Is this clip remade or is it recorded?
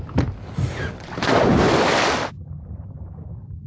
remade